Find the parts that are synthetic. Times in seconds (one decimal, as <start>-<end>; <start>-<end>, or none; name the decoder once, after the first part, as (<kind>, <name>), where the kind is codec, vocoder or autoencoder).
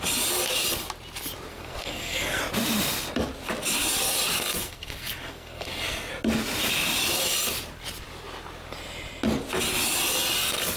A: 1.5-2.4 (codec, SNAC); 4.6-6.1